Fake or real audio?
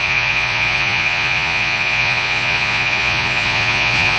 fake